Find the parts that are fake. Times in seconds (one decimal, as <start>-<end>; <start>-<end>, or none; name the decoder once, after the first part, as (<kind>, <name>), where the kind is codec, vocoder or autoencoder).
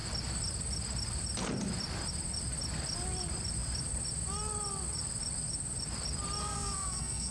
6.4-7.3 (codec, SNAC)